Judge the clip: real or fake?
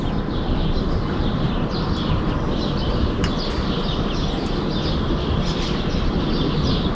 real